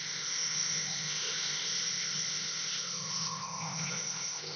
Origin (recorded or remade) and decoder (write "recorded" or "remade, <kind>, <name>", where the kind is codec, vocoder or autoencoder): remade, codec, ZipCodec